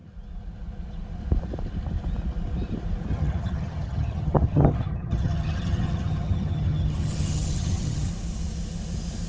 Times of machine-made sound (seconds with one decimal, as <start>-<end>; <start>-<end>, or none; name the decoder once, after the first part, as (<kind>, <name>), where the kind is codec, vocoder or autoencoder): 3.1-8.1 (vocoder, HiFi-GAN)